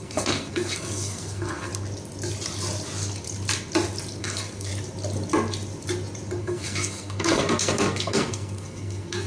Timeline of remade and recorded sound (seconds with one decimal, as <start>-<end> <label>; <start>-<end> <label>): 0.0-1.7 remade; 1.7-4.2 recorded; 4.2-4.7 remade; 4.7-6.4 recorded; 6.4-9.3 remade